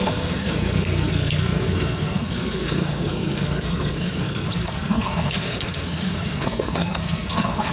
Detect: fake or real fake